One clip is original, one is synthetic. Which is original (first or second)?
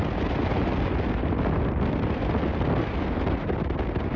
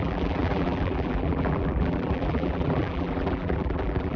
first